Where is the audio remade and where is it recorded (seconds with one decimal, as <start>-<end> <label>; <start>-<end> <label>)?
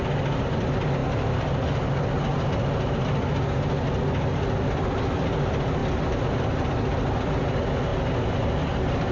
0.0-9.1 recorded